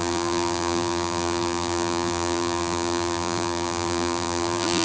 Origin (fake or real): fake